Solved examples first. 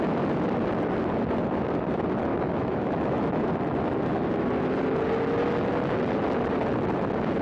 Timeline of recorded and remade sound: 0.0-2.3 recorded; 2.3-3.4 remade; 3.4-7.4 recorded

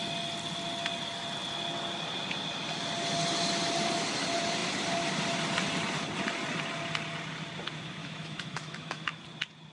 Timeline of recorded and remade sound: 0.0-8.0 recorded; 8.0-9.2 remade; 9.2-9.7 recorded